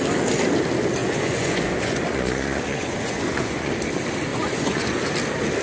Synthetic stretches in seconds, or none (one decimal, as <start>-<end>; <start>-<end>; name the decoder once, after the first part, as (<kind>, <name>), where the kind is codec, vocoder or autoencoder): 1.0-3.7 (vocoder, Vocos); 4.3-5.1